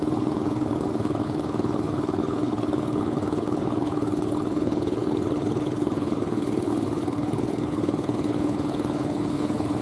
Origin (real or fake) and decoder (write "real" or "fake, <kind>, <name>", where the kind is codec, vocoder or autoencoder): fake, codec, HILCodec